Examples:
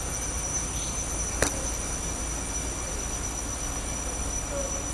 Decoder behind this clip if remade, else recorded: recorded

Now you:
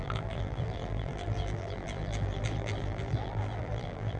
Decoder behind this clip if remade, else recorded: remade, vocoder, BigVGAN v2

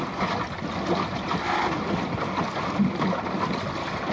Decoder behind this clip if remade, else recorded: recorded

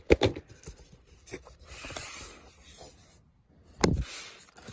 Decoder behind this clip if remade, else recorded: remade, vocoder, BigVGAN v2